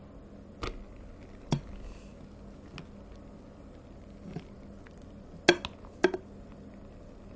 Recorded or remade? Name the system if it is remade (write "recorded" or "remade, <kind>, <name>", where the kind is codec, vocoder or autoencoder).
recorded